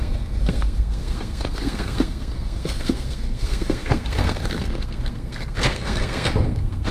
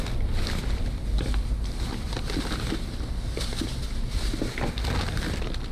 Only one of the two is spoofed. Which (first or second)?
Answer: first